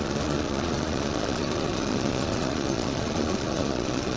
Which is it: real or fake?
fake